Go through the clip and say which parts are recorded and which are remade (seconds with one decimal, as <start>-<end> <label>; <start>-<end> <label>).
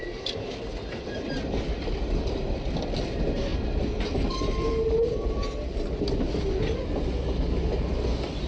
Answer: 0.0-8.5 recorded